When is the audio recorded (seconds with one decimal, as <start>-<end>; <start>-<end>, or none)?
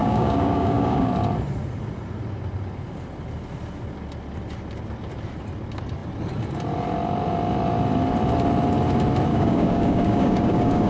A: 1.1-9.3